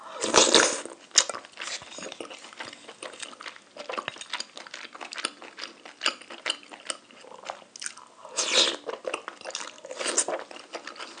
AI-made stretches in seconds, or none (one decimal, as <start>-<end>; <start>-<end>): none